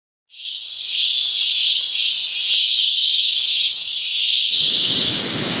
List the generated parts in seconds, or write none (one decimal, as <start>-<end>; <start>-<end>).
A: 0.6-1.1; 2.6-5.6